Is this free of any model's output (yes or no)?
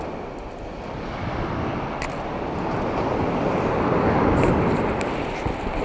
yes